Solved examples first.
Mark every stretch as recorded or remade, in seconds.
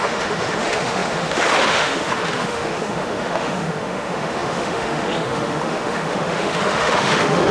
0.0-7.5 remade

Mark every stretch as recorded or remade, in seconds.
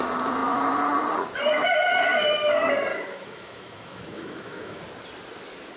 0.0-2.9 recorded; 2.9-4.8 remade; 4.8-5.8 recorded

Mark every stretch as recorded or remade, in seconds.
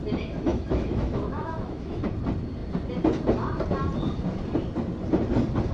0.0-0.5 recorded; 0.5-2.0 remade; 2.0-5.7 recorded